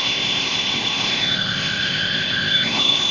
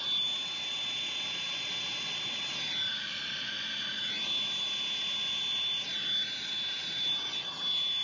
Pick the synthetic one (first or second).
first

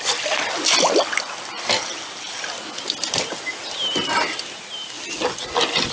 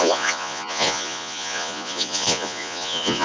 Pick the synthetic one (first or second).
second